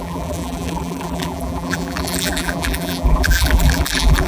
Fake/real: fake